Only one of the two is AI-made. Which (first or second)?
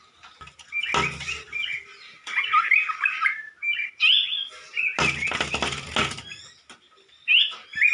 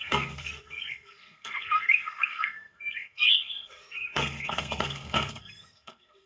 second